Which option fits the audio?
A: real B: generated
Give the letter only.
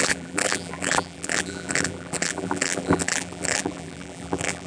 B